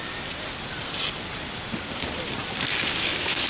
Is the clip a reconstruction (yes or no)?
no